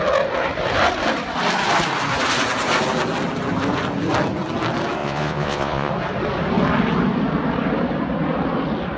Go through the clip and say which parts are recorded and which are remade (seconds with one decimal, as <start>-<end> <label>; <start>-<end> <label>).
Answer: 0.0-5.0 recorded; 5.0-5.9 remade; 5.9-9.0 recorded